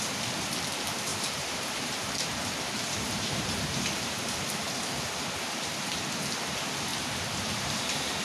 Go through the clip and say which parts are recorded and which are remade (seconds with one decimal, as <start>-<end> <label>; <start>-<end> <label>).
0.0-1.1 recorded; 1.1-6.0 remade; 6.0-6.9 recorded; 6.9-8.2 remade

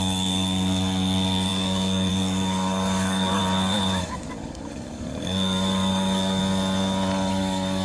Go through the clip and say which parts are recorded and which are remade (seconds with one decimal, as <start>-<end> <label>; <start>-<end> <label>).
0.0-3.4 remade; 3.4-4.0 recorded; 4.0-6.4 remade; 6.4-7.3 recorded; 7.3-7.8 remade